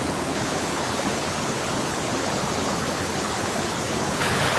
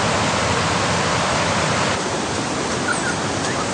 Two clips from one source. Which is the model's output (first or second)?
first